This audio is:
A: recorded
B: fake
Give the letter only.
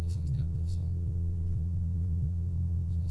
B